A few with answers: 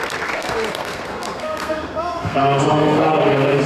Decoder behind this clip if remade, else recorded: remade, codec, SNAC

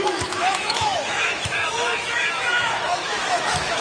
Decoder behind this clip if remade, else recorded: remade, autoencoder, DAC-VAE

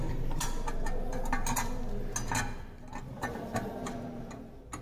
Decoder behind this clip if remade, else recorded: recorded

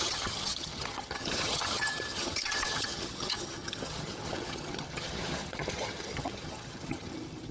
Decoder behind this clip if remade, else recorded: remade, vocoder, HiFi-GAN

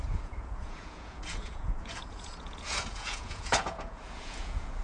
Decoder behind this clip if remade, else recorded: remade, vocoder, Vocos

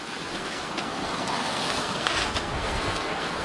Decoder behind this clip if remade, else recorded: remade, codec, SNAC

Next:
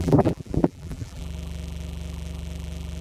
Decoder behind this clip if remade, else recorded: remade, vocoder, BigVGAN v2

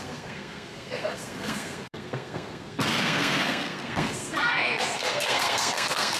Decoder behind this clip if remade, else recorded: remade, codec, SNAC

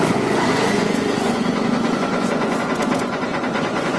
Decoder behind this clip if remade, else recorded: remade, vocoder, Vocos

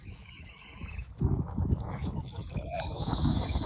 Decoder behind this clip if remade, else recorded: remade, autoencoder, DAC-VAE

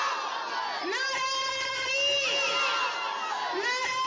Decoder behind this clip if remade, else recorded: recorded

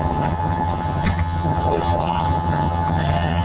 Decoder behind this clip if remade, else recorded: remade, vocoder, HiFi-GAN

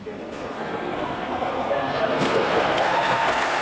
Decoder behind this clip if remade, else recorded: remade, codec, SNAC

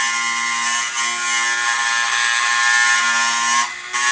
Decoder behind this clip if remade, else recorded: recorded